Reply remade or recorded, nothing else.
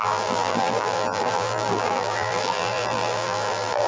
remade